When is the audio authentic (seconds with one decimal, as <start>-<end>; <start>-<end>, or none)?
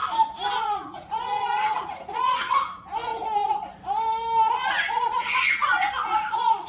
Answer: 0.0-0.6; 3.1-4.5